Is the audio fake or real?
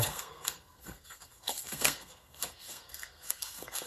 fake